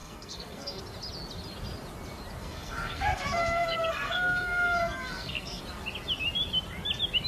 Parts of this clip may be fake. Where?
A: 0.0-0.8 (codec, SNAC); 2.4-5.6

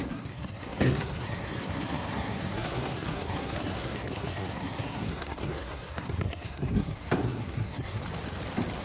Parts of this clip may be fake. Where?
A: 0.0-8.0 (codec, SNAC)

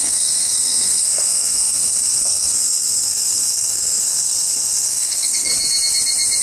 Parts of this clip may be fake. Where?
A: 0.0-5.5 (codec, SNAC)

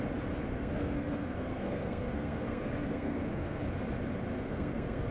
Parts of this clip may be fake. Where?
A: 0.5-3.6 (codec, SNAC); 4.3-5.1

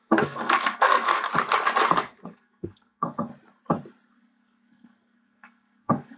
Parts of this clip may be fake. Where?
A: 0.0-1.3 (codec, SNAC); 1.8-3.3; 4.1-6.2